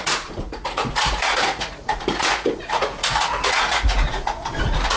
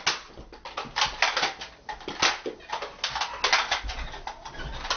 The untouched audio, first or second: second